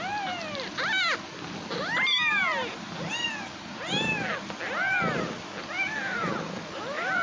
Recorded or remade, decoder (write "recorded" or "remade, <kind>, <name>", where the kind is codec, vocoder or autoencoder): recorded